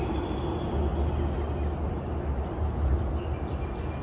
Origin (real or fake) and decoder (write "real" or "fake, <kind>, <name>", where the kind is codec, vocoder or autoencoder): real